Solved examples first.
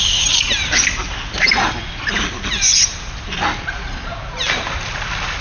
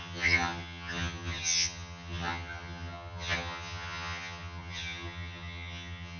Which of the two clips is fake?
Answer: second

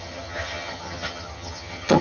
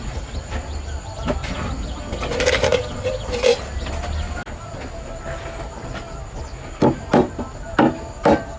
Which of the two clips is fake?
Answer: first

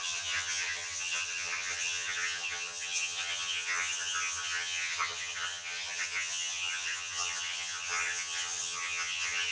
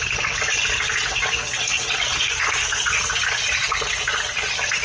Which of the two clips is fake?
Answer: first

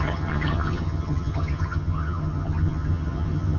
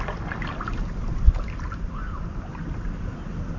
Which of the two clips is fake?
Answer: first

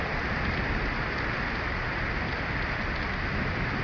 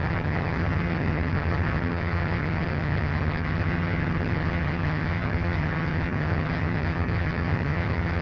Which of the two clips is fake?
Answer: second